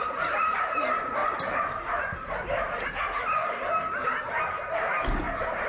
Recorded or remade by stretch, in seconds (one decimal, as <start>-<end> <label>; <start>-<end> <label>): 0.0-5.7 recorded